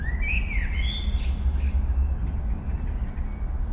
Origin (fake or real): real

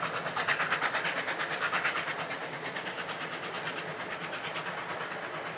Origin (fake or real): real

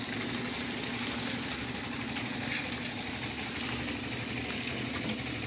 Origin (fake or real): real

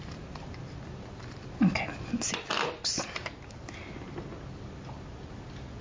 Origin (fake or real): real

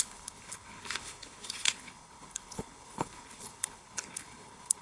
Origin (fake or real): fake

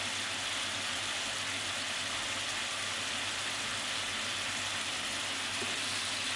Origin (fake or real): real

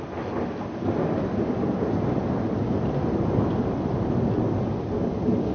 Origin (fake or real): real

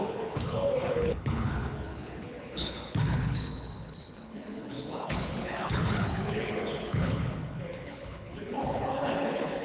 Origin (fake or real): fake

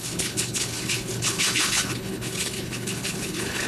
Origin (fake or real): fake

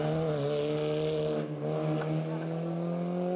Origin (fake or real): real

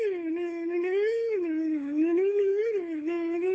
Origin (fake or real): fake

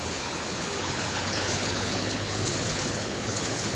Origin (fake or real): fake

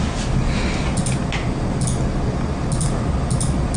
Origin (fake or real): real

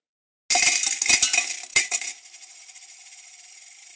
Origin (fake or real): real